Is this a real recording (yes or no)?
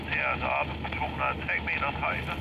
yes